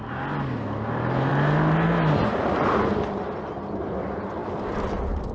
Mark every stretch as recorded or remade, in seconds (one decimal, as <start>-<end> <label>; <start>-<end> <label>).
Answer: 0.0-5.3 recorded